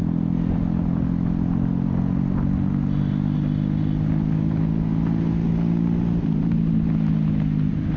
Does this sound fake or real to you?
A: real